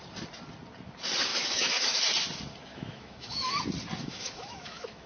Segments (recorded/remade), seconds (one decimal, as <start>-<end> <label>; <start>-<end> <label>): 0.0-1.3 recorded; 1.3-2.0 remade; 2.0-2.7 recorded; 2.7-3.6 remade; 3.6-4.0 recorded; 4.0-5.1 remade